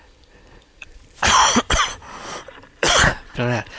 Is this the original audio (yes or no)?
no